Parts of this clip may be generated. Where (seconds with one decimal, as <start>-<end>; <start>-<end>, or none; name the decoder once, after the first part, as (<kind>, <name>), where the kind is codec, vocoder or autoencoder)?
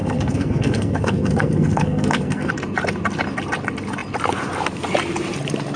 0.0-2.5 (codec, SNAC)